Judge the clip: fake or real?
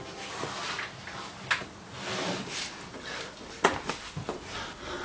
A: real